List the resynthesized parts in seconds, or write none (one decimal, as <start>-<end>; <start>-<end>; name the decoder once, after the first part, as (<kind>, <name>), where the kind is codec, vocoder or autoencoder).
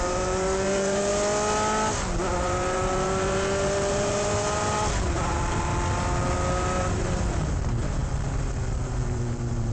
0.0-1.1 (vocoder, BigVGAN v2); 2.4-5.7; 6.8-9.7